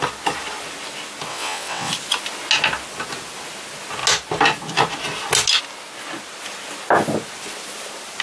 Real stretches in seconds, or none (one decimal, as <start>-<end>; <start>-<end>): 0.0-1.3; 1.9-8.2